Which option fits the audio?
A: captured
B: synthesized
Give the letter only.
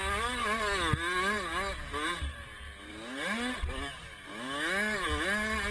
A